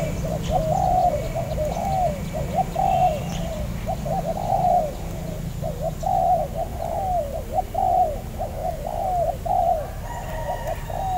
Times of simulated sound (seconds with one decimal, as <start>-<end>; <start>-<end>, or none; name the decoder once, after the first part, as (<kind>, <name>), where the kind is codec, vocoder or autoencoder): 6.7-7.8 (vocoder, BigVGAN v2); 8.6-9.5